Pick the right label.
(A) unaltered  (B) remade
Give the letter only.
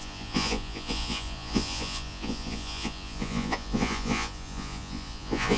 B